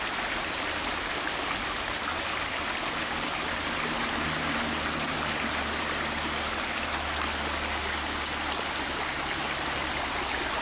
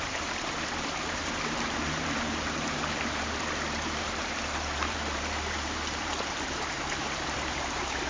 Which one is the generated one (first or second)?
second